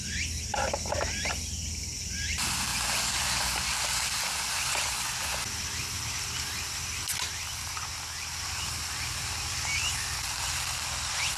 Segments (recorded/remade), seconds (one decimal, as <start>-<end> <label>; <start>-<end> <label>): 0.0-11.4 recorded